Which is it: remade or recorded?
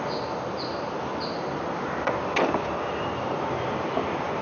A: recorded